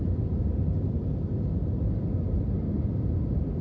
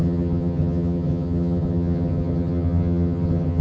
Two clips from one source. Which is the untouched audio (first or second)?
first